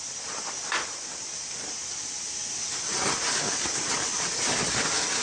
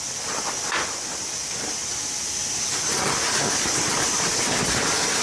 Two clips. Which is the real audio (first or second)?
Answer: second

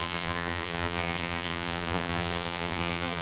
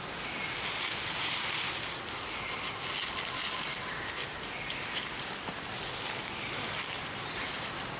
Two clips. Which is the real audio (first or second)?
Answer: second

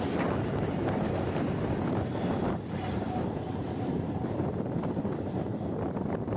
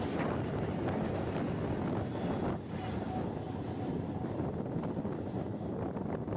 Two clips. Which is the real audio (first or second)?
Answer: second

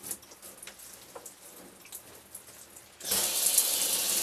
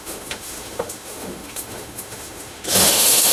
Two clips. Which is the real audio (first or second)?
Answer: first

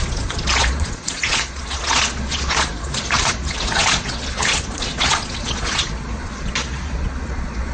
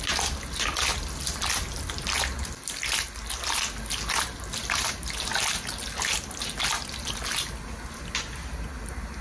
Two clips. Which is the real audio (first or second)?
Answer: second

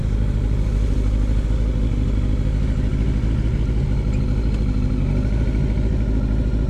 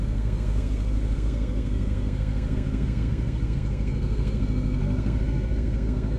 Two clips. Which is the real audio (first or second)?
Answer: first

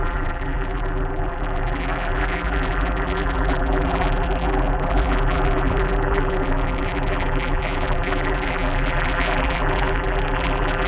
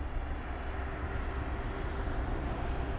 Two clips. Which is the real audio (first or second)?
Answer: second